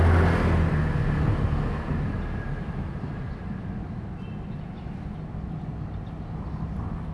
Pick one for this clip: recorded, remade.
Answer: recorded